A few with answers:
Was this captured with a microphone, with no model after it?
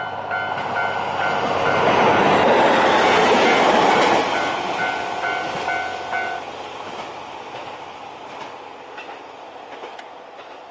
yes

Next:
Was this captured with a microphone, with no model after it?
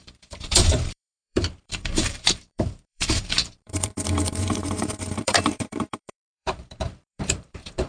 no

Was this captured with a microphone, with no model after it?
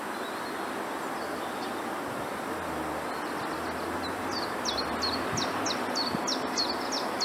yes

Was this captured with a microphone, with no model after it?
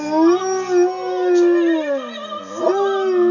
yes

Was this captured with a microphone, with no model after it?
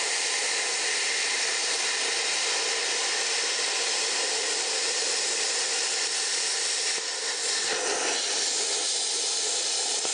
no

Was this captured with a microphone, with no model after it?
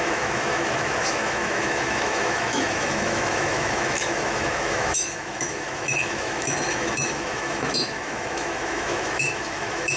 no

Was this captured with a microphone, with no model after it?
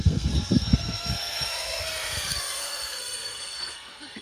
no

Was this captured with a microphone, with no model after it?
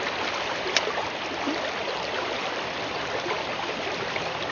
no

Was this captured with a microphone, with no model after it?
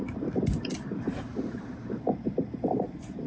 no